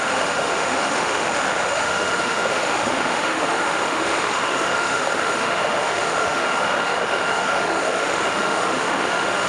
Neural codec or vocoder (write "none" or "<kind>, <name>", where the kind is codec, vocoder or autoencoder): autoencoder, DAC-VAE